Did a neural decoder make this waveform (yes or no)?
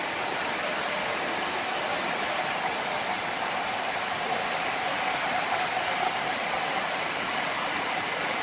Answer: no